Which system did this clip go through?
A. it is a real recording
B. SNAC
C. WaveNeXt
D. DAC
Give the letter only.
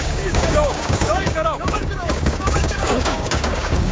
D